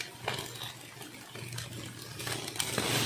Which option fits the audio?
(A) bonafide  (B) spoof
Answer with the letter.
A